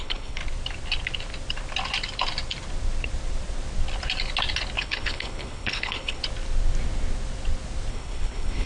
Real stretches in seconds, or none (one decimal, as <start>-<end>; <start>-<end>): 0.4-4.8; 6.2-7.9

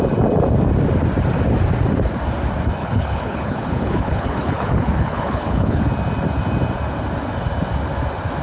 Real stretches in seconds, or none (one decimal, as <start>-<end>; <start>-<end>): 0.0-2.8; 5.8-8.4

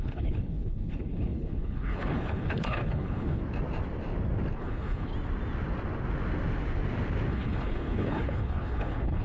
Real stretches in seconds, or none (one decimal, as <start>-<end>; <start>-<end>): 3.4-4.6; 5.1-7.3

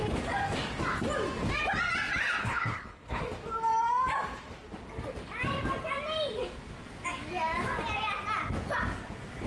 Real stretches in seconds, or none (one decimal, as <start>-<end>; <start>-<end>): 0.0-2.4; 3.2-9.5